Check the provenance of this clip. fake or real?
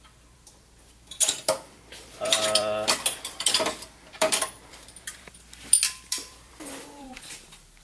fake